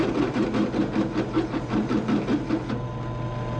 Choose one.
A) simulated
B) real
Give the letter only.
B